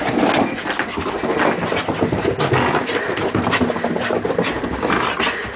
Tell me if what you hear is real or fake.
real